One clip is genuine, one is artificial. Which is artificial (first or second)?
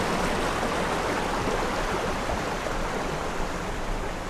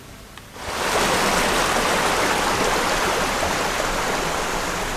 first